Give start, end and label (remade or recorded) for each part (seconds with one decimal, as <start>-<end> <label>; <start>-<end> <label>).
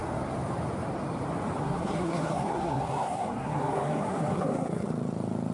0.0-1.6 recorded; 1.6-4.9 remade; 4.9-5.5 recorded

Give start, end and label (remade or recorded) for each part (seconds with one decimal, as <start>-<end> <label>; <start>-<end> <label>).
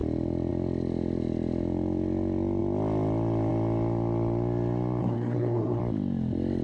0.0-5.0 recorded; 5.0-5.8 remade; 5.8-6.6 recorded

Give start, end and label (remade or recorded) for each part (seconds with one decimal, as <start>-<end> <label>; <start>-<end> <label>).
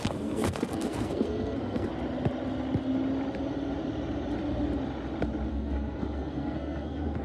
0.0-1.9 remade; 1.9-5.5 recorded; 5.5-7.2 remade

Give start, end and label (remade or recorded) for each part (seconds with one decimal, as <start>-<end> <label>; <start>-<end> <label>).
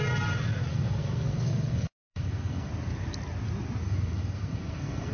0.0-0.7 recorded; 0.7-2.7 remade; 2.7-3.8 recorded; 3.8-5.1 remade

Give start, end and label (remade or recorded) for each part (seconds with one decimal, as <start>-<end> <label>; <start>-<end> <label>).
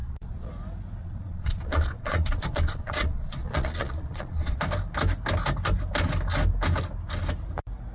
0.0-0.5 remade; 0.5-1.0 recorded; 1.0-4.6 remade; 4.6-7.9 recorded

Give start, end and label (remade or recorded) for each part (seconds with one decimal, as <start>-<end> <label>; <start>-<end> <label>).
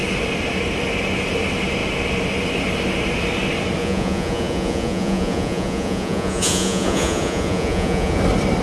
0.0-3.8 recorded; 3.8-8.2 remade; 8.2-8.6 recorded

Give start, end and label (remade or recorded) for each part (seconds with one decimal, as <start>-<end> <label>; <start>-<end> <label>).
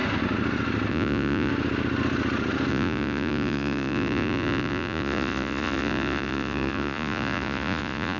0.0-0.9 recorded; 0.9-1.5 remade; 1.5-2.7 recorded; 2.7-8.2 remade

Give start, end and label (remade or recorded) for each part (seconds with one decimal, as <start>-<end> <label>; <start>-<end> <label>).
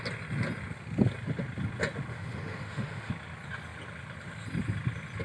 0.0-2.1 recorded; 2.1-3.1 remade; 3.1-5.2 recorded